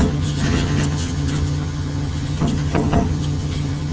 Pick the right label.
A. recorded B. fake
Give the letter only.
B